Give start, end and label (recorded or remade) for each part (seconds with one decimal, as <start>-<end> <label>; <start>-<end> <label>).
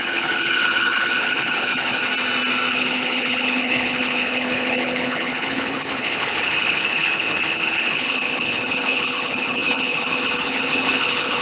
0.0-2.0 remade; 2.0-2.7 recorded; 2.7-11.4 remade